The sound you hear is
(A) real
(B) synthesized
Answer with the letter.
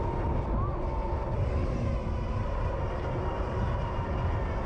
A